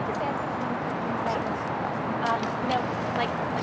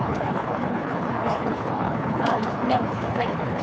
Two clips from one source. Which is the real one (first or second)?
first